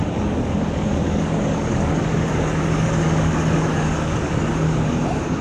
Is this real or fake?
fake